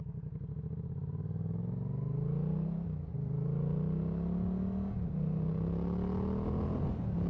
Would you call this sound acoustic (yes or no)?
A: yes